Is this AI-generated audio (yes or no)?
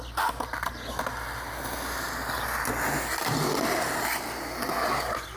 no